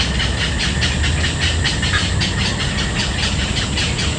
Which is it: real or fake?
real